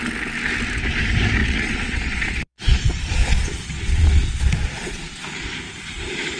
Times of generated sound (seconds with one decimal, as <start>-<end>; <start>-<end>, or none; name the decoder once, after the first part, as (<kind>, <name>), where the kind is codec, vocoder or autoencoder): 1.4-5.2 (vocoder, Vocos)